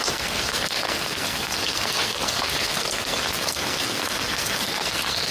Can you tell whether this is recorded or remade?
remade